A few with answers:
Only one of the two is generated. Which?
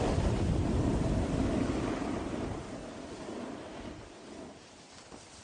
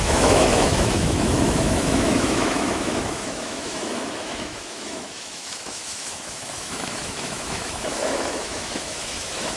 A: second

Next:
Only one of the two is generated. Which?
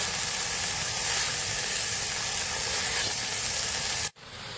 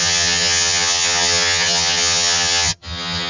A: second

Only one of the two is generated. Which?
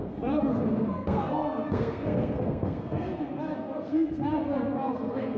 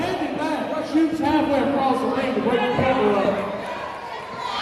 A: first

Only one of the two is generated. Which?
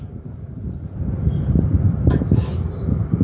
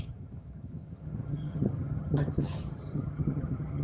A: second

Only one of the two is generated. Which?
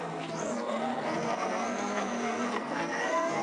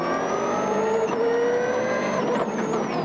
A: first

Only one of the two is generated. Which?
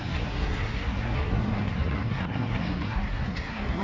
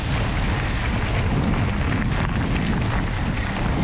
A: first